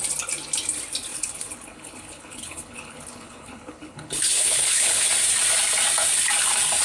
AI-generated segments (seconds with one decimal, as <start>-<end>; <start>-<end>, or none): 1.1-5.1